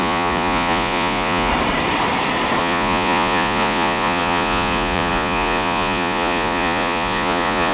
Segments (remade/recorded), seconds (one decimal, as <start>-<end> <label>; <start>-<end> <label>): 0.0-1.5 remade; 1.5-2.6 recorded; 2.6-7.7 remade